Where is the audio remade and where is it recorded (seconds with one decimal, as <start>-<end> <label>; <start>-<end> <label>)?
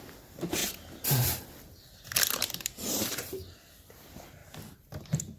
0.0-2.4 recorded; 2.4-3.9 remade; 3.9-4.4 recorded; 4.4-5.4 remade